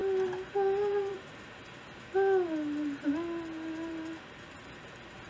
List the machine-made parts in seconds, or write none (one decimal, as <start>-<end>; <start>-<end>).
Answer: 1.1-1.6; 3.9-5.3